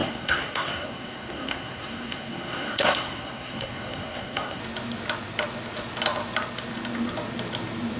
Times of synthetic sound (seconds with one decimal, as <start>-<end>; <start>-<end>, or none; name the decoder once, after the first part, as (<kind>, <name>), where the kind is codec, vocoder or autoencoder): 0.0-4.6 (codec, SNAC)